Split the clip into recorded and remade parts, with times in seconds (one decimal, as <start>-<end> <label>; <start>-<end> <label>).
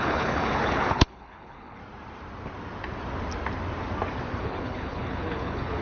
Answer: 0.0-1.8 remade; 1.8-4.4 recorded; 4.4-5.8 remade